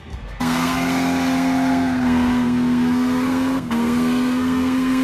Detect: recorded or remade remade